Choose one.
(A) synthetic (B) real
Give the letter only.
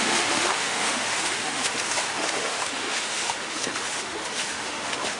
A